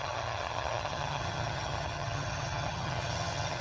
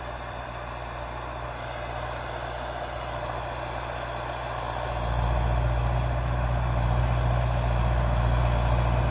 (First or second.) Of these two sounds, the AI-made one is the first